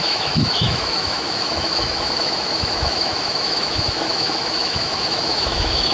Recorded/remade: remade